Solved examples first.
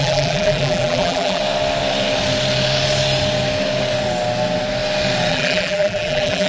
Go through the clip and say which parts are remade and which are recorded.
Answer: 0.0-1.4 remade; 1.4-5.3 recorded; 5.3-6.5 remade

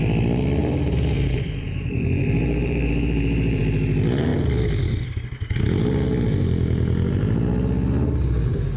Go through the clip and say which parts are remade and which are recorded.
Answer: 0.0-0.6 recorded; 0.6-3.6 remade; 3.6-8.8 recorded

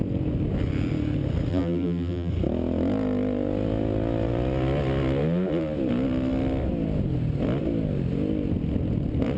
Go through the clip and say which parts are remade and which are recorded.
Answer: 0.0-1.5 recorded; 1.5-2.3 remade; 2.3-9.4 recorded

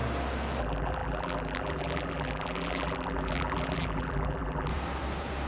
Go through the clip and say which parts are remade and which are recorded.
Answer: 0.0-0.6 recorded; 0.6-4.7 remade; 4.7-5.5 recorded

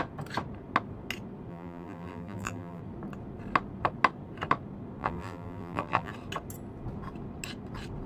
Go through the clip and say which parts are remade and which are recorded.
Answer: 0.0-1.5 recorded; 1.5-2.8 remade; 2.8-5.0 recorded; 5.0-6.1 remade; 6.1-8.1 recorded

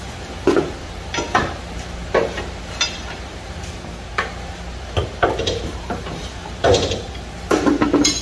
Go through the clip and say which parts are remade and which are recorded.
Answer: 0.0-8.2 remade